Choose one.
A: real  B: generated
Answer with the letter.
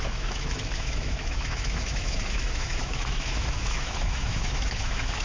B